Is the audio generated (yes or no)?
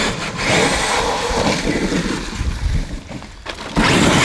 no